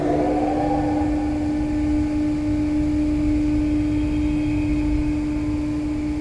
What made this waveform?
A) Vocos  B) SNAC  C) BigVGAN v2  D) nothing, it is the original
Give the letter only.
D